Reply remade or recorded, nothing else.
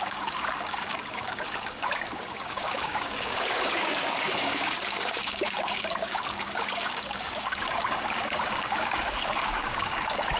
remade